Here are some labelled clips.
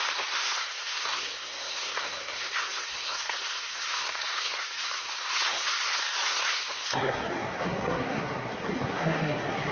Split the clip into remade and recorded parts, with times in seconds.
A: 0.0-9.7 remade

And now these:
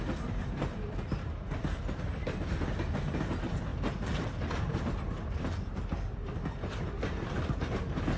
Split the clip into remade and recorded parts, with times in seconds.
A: 0.0-8.2 remade

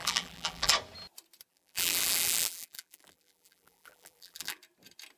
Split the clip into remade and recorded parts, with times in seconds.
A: 0.0-0.7 remade; 0.7-1.5 recorded; 1.5-4.6 remade; 4.6-5.2 recorded

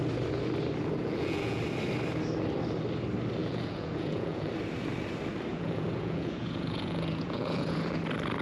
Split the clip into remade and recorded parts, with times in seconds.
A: 0.0-1.0 recorded; 1.0-1.6 remade; 1.6-3.4 recorded; 3.4-4.5 remade; 4.5-5.5 recorded; 5.5-8.0 remade; 8.0-8.4 recorded